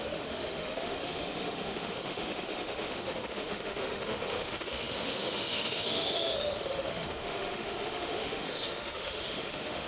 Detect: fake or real fake